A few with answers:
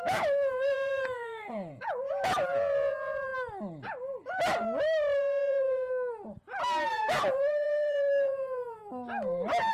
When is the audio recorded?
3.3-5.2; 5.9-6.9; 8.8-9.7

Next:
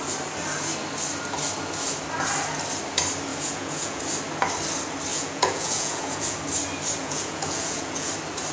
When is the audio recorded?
0.0-3.3; 4.0-5.1; 6.4-7.0; 8.1-8.5

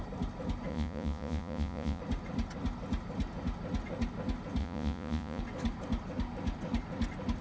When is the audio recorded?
0.0-0.7; 2.0-4.6; 5.4-7.4

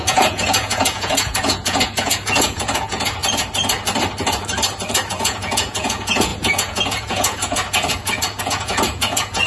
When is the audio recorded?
3.2-5.1

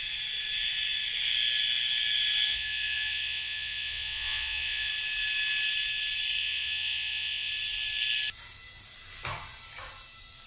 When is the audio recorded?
0.0-2.5; 4.9-6.4; 7.5-10.5

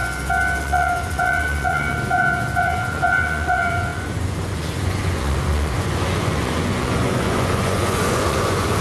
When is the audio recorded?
0.0-0.6